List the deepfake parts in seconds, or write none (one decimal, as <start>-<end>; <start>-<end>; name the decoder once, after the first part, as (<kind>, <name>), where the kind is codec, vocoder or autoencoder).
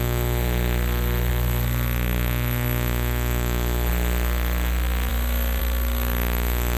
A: 0.0-6.8 (autoencoder, DAC-VAE)